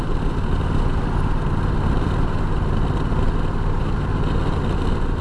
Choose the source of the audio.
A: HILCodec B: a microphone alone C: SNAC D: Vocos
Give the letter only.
B